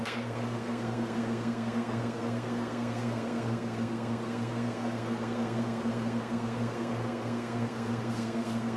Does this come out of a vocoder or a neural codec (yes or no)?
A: yes